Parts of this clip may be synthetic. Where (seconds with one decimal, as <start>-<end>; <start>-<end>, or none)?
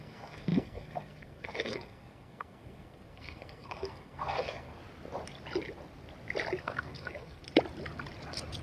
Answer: 0.0-4.8; 6.6-7.4